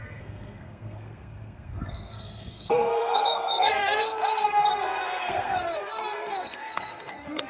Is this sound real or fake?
fake